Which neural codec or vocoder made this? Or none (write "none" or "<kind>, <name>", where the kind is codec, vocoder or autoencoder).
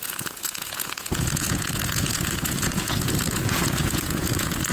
vocoder, Vocos